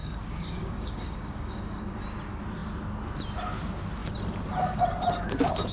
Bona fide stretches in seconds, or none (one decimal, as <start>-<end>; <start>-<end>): 2.0-5.7